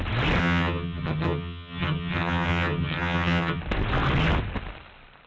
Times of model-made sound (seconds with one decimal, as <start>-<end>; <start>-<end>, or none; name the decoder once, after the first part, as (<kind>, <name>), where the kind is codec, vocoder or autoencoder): 0.4-3.6 (vocoder, HiFi-GAN)